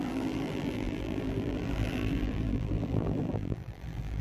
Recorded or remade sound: remade